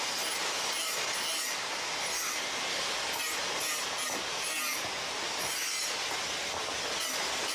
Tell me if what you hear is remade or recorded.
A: recorded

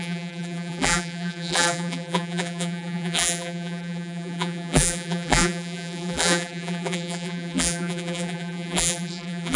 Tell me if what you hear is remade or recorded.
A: remade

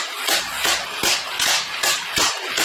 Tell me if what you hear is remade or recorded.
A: remade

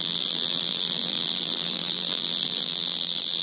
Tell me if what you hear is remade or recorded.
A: remade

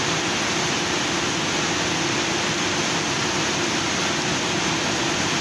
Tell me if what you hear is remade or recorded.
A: recorded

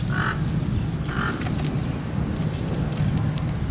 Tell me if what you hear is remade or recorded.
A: recorded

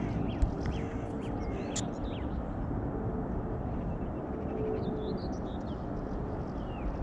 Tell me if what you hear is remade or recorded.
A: recorded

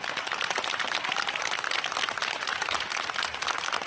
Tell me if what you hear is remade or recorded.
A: recorded